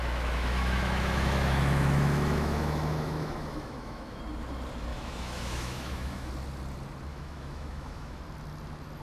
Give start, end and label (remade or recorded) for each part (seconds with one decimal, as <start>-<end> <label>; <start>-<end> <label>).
0.0-4.2 remade; 4.2-4.9 recorded; 4.9-6.3 remade; 6.3-7.1 recorded; 7.1-8.2 remade; 8.2-9.0 recorded